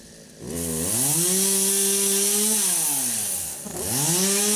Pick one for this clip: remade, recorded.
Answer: recorded